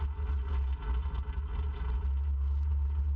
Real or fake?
real